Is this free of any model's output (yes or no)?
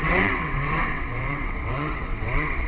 no